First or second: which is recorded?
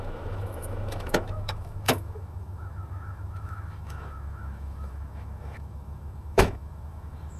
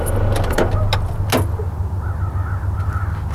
second